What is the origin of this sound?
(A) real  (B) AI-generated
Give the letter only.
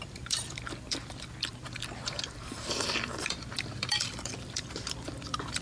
B